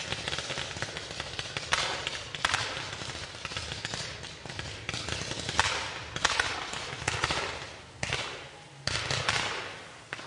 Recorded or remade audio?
recorded